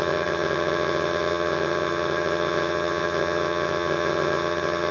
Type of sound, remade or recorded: remade